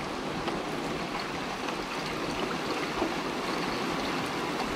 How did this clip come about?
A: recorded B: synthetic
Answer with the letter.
A